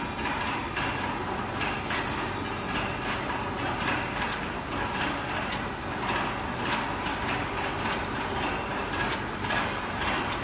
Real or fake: real